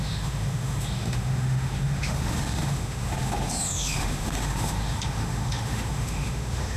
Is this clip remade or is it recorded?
remade